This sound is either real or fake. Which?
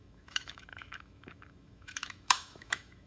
fake